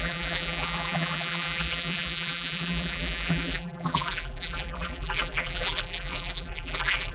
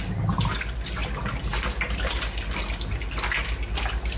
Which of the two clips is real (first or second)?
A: second